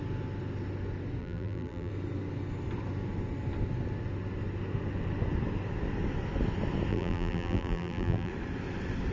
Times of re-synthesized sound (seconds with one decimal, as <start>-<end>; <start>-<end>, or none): 1.2-1.9; 6.9-8.3